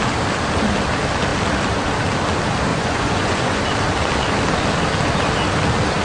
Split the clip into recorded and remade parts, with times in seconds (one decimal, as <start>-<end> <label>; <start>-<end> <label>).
0.0-2.7 recorded; 2.7-3.6 remade; 3.6-6.0 recorded